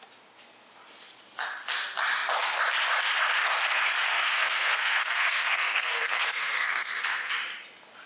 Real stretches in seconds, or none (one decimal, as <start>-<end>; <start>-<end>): 0.0-4.1; 7.3-8.1